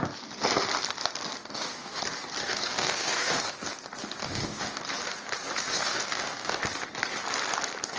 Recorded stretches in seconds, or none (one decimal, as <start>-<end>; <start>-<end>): 0.0-1.4; 2.0-2.4; 3.5-4.2; 4.8-5.7; 6.6-8.0

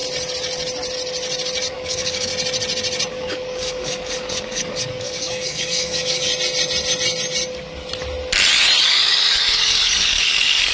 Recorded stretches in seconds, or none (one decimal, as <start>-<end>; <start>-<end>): 0.0-1.7; 2.3-3.1; 6.3-8.8

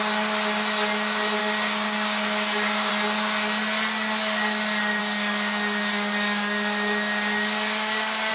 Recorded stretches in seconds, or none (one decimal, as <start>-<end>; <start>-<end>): 0.0-1.4; 2.9-5.0

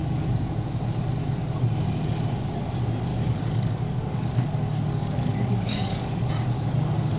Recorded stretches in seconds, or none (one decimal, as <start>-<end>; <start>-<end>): 0.0-3.1; 6.3-7.2

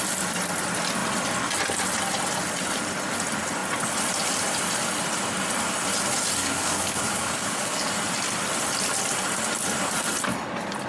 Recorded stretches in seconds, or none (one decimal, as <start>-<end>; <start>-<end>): 0.0-6.4; 7.9-10.9